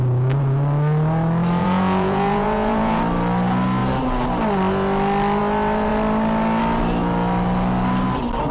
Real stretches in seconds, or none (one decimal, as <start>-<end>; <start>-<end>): 0.0-1.6; 3.0-8.5